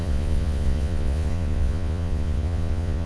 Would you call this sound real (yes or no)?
no